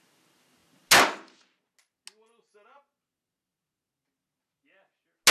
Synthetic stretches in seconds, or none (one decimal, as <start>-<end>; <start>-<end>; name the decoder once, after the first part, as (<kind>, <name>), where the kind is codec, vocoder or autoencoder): none